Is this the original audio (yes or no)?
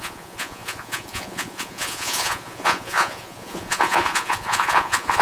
no